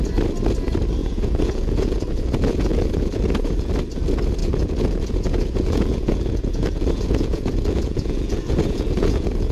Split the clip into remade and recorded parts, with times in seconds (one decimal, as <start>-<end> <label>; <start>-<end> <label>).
0.0-1.0 recorded; 1.0-3.7 remade; 3.7-4.4 recorded; 4.4-9.5 remade